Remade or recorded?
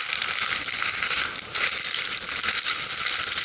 recorded